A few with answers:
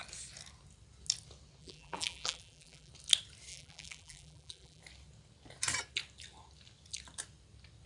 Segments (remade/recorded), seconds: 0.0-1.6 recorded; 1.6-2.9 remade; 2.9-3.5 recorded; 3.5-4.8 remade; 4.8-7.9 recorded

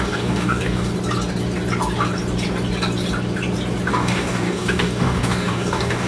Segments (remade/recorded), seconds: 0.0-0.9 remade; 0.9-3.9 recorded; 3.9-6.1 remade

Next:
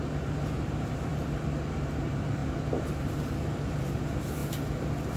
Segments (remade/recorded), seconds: 0.0-1.1 remade; 1.1-1.7 recorded; 1.7-4.4 remade; 4.4-5.2 recorded

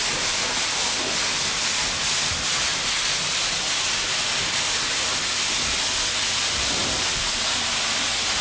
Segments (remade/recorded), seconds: 0.0-8.4 recorded

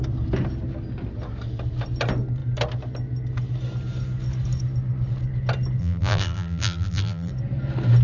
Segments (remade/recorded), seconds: 0.0-5.8 recorded; 5.8-7.3 remade; 7.3-8.0 recorded